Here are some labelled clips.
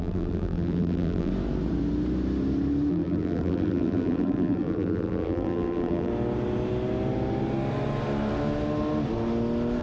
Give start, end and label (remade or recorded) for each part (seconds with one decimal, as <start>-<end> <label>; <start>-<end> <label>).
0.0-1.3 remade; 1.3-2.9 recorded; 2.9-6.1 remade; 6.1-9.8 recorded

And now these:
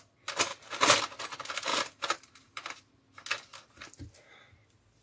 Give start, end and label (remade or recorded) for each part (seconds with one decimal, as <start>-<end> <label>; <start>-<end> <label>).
0.0-0.5 recorded; 0.5-1.0 remade; 1.0-1.7 recorded; 1.7-2.9 remade; 2.9-5.0 recorded

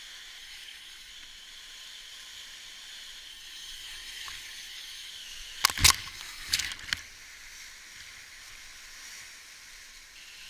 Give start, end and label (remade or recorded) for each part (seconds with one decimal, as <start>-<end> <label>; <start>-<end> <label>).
0.0-0.4 recorded; 0.4-1.1 remade; 1.1-3.3 recorded; 3.3-5.1 remade; 5.1-6.0 recorded; 6.0-6.7 remade; 6.7-10.5 recorded

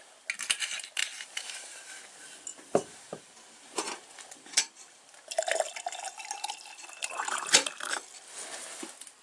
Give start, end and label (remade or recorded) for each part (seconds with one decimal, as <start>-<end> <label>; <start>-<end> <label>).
0.0-1.0 recorded; 1.0-1.9 remade; 1.9-2.5 recorded; 2.5-4.6 remade; 4.6-7.0 recorded; 7.0-7.7 remade; 7.7-9.2 recorded